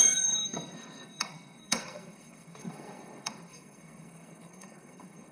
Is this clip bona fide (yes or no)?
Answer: no